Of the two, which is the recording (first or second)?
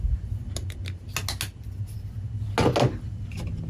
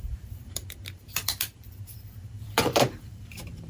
first